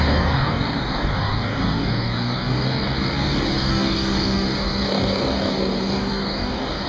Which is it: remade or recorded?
remade